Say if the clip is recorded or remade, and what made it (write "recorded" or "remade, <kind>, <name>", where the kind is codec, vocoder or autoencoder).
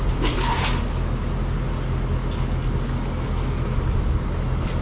recorded